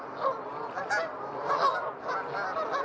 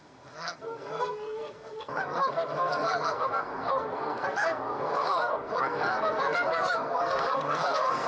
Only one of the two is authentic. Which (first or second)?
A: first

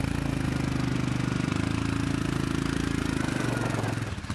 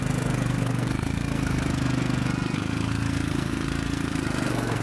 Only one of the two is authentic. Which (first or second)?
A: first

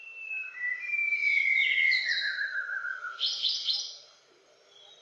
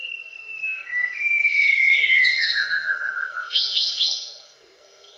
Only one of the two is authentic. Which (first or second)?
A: first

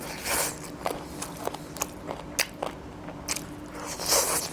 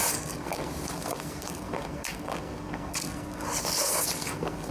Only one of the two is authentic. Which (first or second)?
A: first